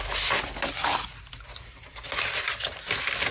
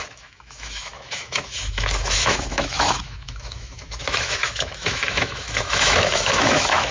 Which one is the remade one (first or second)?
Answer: second